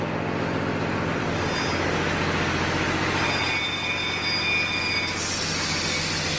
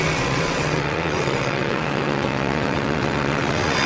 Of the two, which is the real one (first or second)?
first